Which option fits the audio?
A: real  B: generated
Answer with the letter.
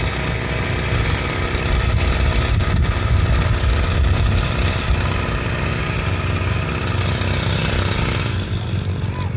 A